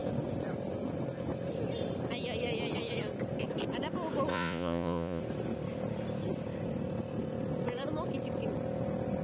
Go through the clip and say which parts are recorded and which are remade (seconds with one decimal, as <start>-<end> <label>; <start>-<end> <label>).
0.0-4.3 recorded; 4.3-5.2 remade; 5.2-9.2 recorded